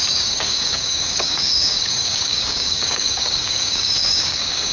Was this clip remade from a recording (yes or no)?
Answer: yes